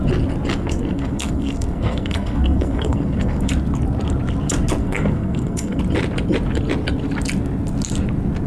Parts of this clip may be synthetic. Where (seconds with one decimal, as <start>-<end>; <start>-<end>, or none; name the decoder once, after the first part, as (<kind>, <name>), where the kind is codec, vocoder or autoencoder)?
0.5-3.5 (codec, SNAC); 4.8-5.8